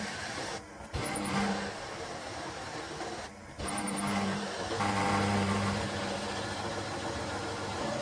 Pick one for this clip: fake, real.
fake